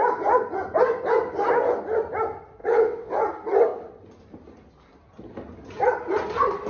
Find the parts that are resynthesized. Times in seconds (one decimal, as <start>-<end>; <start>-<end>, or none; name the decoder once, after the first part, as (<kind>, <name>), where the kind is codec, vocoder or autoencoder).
2.6-3.2 (vocoder, WaveNeXt)